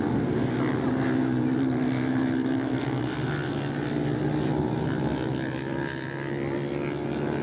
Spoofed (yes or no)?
no